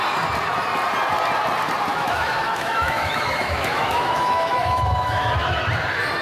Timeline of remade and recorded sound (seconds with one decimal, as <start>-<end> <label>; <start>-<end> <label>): 0.0-1.9 recorded; 1.9-5.6 remade; 5.6-6.2 recorded